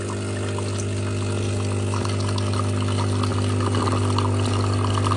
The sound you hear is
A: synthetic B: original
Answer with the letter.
B